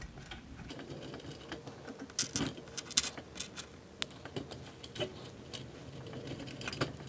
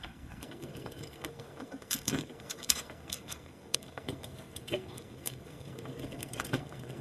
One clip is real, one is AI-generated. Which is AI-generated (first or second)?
second